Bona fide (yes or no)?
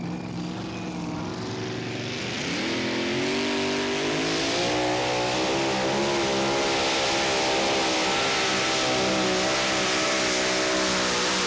yes